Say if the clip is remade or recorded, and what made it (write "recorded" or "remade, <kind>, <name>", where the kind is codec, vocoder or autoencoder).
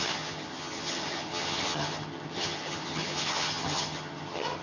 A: remade, vocoder, HiFi-GAN